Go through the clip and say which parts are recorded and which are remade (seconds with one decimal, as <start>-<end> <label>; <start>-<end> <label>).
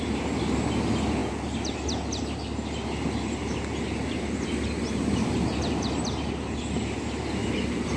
0.0-8.0 recorded